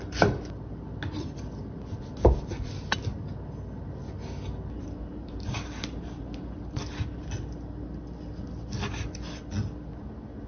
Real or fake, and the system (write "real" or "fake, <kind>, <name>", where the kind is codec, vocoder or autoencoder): real